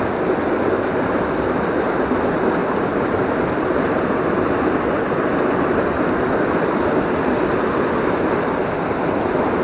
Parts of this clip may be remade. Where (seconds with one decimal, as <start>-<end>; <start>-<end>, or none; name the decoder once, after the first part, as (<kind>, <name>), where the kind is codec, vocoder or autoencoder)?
none